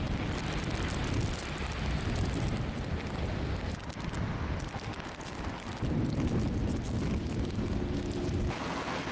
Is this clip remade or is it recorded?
recorded